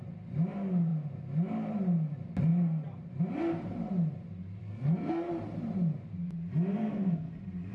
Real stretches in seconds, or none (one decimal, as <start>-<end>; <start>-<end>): 0.0-4.6; 5.3-6.8; 7.3-7.7